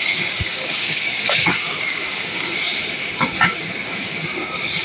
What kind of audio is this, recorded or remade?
remade